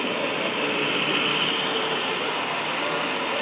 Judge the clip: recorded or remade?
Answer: recorded